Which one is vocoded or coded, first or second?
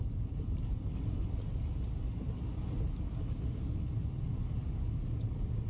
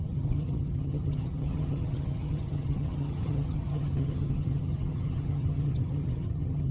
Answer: second